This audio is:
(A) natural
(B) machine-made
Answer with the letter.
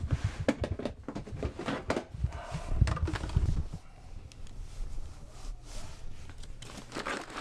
A